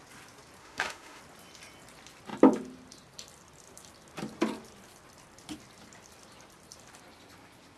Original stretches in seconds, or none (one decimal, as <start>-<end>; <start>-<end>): 0.0-0.6; 1.2-7.8